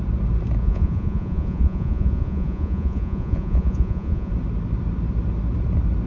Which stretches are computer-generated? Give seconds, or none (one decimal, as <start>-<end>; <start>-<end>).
0.6-4.3